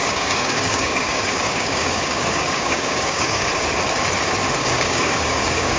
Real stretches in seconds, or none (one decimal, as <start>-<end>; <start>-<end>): 3.5-4.6